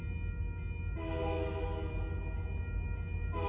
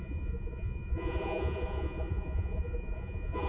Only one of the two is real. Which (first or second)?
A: first